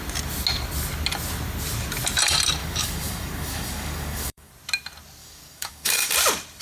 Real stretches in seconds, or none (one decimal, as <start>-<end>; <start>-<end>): 0.0-2.6; 4.5-5.2; 6.1-6.6